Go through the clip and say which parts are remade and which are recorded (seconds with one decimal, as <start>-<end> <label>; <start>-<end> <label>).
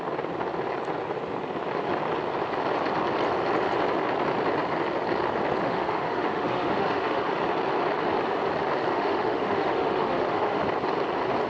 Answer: 0.0-5.6 recorded; 5.6-7.3 remade; 7.3-8.9 recorded; 8.9-10.6 remade; 10.6-11.5 recorded